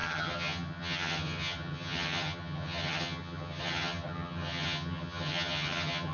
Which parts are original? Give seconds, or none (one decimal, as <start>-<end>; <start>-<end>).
none